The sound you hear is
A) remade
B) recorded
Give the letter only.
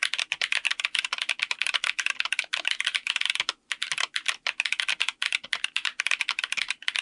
B